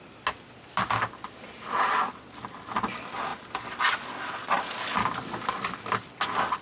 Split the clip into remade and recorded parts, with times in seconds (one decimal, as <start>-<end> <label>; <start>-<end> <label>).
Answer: 0.0-6.6 recorded

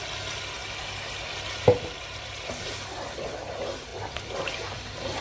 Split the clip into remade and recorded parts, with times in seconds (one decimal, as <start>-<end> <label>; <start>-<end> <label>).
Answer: 0.0-5.2 recorded

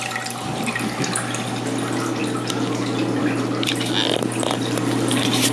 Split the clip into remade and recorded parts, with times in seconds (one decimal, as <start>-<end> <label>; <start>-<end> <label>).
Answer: 0.0-5.5 recorded

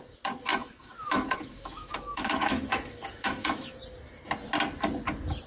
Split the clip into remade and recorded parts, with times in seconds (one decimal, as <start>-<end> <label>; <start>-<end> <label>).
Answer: 0.0-0.5 recorded; 0.5-3.8 remade; 3.8-5.5 recorded